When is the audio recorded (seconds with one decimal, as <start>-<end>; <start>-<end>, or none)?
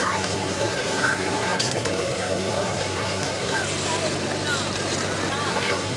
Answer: 3.6-5.5